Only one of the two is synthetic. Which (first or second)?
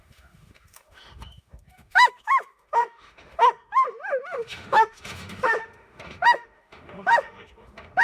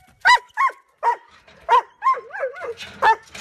first